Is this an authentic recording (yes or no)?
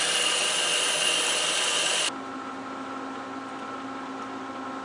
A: yes